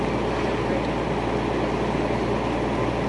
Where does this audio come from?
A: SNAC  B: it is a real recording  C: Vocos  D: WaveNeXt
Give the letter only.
B